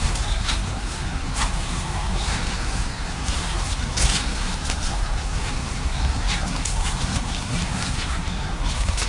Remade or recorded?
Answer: remade